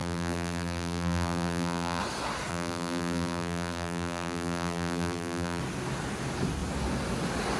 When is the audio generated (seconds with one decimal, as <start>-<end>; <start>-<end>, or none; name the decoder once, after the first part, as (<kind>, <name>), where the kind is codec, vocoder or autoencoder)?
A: 0.0-2.0 (vocoder, BigVGAN v2); 2.5-5.6